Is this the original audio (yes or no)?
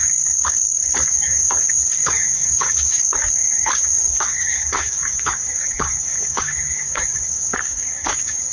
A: no